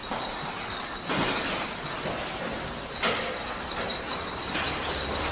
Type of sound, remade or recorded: recorded